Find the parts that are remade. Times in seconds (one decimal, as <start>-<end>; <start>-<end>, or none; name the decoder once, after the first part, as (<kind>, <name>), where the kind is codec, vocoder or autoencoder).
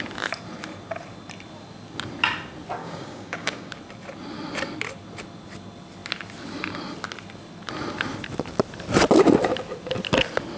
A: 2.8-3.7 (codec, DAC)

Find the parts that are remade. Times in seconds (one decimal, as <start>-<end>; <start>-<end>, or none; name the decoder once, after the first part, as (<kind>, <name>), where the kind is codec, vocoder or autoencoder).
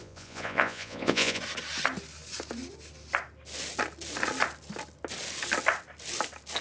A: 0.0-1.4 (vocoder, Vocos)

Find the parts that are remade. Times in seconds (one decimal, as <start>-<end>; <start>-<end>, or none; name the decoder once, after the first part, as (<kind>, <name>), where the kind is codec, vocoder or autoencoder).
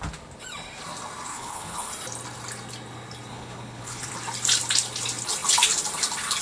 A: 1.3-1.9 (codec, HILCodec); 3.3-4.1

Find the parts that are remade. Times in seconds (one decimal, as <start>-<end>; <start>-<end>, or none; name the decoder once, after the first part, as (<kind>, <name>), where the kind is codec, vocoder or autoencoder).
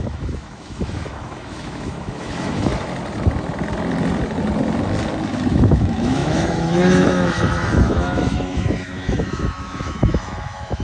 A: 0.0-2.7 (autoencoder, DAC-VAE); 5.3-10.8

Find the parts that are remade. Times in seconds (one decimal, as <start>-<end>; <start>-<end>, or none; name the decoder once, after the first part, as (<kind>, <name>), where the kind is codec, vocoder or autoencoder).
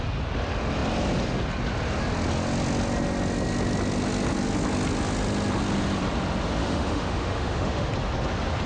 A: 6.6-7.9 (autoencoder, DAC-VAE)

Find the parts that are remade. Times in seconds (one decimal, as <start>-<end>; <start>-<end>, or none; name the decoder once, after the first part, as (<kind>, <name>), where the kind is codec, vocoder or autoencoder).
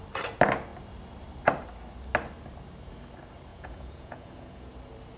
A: 3.5-4.7 (vocoder, Vocos)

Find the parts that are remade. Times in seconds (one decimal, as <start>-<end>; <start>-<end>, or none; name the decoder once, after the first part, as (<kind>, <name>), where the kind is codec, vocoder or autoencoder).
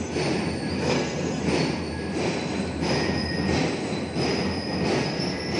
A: 0.8-1.4 (codec, SNAC)